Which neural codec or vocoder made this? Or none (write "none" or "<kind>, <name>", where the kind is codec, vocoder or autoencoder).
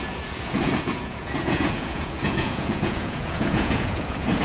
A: vocoder, Vocos